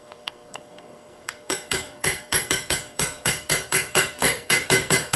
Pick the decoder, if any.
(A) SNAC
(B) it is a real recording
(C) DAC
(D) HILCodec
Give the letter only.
A